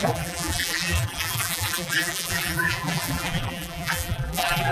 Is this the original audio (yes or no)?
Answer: no